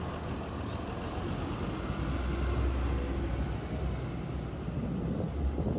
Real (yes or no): yes